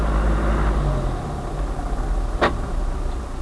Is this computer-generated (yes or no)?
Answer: no